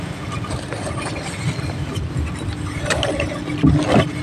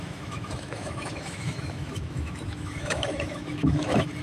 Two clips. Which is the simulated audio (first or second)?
second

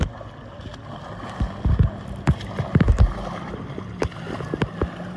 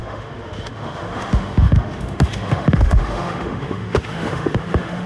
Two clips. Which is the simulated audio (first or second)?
second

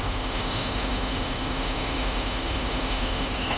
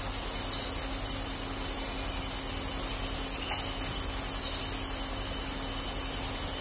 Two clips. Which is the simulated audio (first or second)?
first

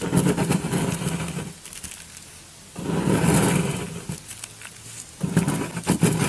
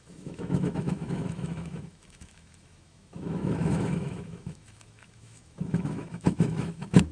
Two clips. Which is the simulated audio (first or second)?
second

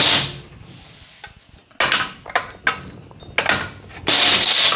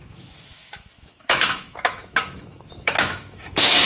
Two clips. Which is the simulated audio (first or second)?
second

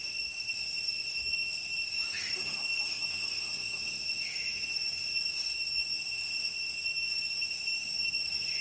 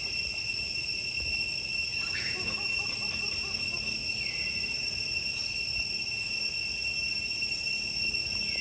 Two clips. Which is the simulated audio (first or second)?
first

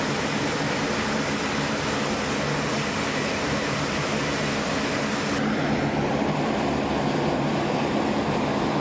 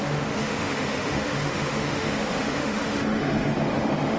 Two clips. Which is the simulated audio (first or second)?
second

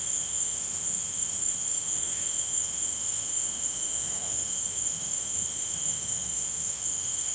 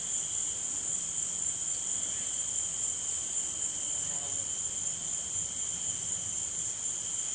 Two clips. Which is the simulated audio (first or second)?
first